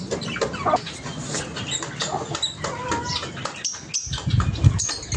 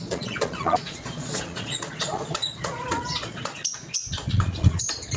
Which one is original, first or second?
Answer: first